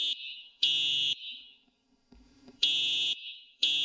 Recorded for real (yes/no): no